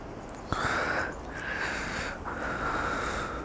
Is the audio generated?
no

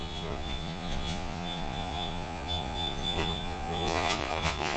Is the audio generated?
yes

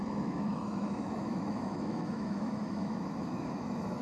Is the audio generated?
yes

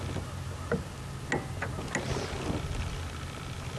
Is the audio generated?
no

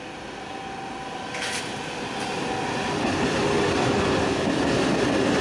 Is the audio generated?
no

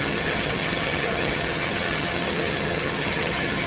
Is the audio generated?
yes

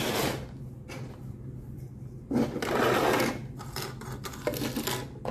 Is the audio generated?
no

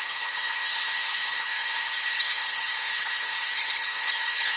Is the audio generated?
yes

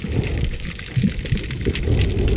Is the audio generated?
no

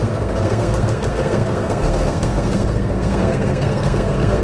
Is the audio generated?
yes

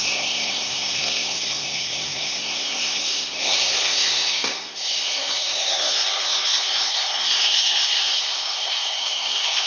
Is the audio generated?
yes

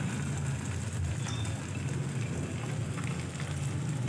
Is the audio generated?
no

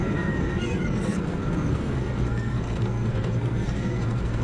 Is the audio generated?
yes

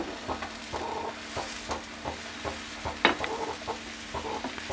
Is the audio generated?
no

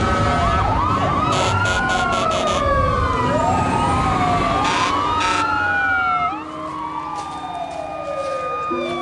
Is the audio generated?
no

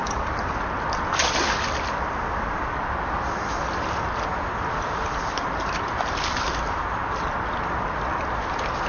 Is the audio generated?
no